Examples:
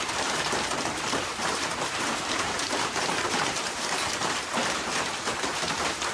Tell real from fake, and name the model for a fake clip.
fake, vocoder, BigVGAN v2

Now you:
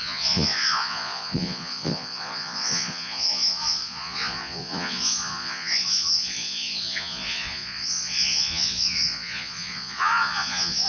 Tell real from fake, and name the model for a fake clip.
fake, vocoder, Vocos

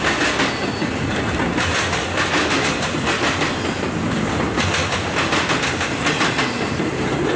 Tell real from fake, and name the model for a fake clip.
real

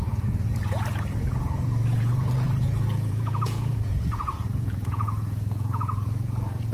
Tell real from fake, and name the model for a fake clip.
fake, vocoder, Vocos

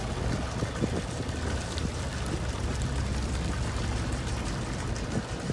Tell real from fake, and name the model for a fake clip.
real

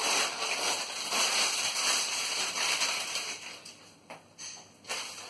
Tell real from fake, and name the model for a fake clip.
fake, vocoder, BigVGAN v2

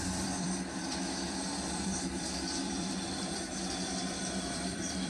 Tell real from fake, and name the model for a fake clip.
fake, vocoder, BigVGAN v2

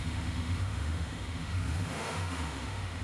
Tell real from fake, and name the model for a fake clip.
fake, autoencoder, DAC-VAE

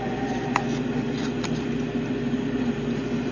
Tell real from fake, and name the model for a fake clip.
real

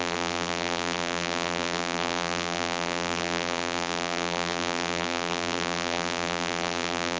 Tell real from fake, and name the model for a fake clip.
fake, vocoder, BigVGAN v2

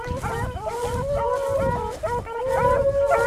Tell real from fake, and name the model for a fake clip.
real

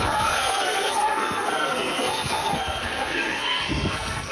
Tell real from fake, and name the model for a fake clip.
fake, codec, SNAC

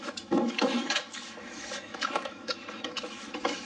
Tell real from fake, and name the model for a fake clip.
fake, autoencoder, DAC-VAE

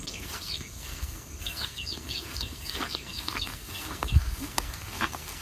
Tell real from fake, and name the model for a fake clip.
fake, codec, SNAC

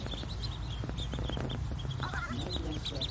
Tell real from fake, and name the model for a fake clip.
real